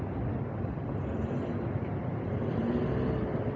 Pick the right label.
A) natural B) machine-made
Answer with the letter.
A